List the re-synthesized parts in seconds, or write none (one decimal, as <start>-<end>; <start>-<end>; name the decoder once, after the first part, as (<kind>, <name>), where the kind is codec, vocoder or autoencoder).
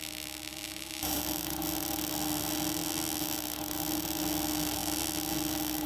0.5-1.2 (vocoder, BigVGAN v2)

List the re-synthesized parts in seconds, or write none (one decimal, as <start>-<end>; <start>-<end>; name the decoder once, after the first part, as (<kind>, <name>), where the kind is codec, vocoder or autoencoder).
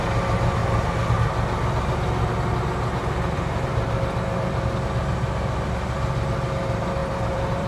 0.6-1.1 (vocoder, BigVGAN v2); 3.0-3.9; 7.0-7.7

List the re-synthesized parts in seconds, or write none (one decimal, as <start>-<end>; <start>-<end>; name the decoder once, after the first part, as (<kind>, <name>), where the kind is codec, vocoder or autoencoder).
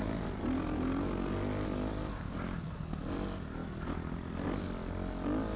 none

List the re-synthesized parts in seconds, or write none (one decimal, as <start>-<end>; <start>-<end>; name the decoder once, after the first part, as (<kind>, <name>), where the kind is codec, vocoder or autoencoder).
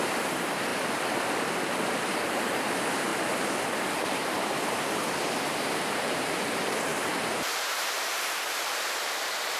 0.0-0.7 (vocoder, BigVGAN v2); 2.0-3.1; 4.0-9.6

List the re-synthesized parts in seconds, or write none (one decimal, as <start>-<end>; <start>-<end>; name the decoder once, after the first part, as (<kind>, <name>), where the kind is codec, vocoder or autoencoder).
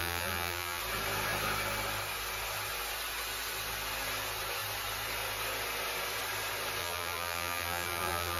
0.0-0.8 (vocoder, BigVGAN v2); 6.8-8.4